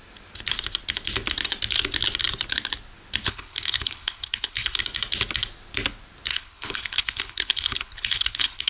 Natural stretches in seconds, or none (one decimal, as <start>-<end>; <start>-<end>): 0.0-3.3; 4.8-6.3